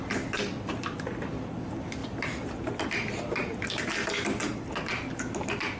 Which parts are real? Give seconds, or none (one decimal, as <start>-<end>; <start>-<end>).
0.0-5.8